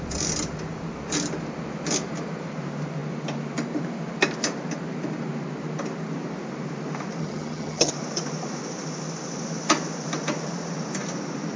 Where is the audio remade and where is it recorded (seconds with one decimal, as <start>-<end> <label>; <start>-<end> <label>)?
0.0-7.2 recorded; 7.2-7.9 remade; 7.9-11.6 recorded